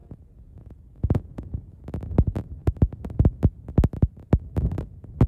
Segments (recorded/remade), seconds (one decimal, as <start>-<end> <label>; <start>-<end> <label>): 0.0-1.7 remade; 1.7-5.3 recorded